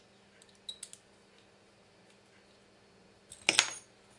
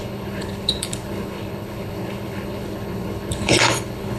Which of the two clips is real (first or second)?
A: first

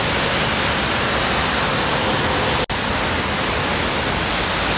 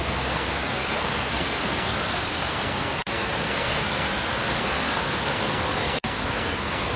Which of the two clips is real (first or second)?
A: first